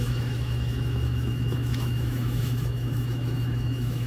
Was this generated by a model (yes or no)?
yes